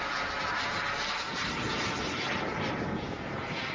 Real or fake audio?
real